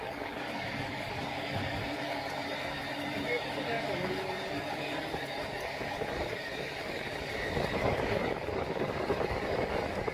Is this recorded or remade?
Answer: remade